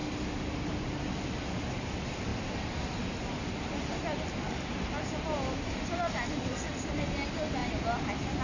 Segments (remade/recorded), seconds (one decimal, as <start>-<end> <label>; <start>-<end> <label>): 0.0-8.4 recorded